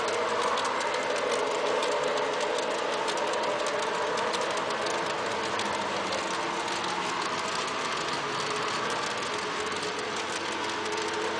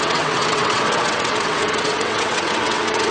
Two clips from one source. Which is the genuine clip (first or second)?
first